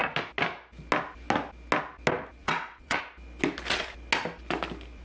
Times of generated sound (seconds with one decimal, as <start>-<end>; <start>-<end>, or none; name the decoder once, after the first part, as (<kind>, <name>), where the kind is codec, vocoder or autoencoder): 2.4-3.0 (vocoder, WaveNeXt)